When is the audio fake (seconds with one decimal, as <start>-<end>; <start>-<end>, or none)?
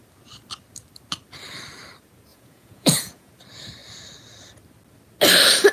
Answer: 2.3-3.3